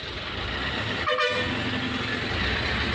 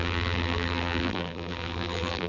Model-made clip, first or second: second